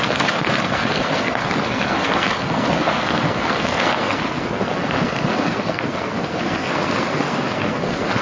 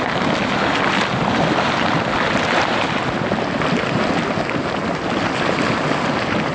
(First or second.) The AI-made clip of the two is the first